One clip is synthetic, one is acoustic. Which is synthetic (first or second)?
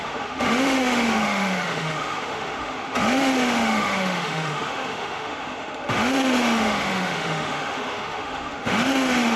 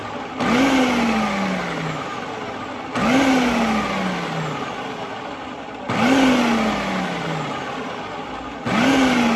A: first